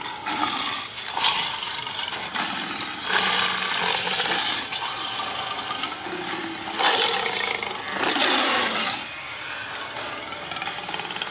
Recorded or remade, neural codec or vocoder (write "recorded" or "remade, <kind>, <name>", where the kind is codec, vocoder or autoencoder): recorded